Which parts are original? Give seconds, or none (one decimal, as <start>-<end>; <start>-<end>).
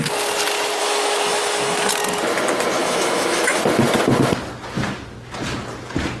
0.0-0.8; 1.9-2.8; 3.6-6.2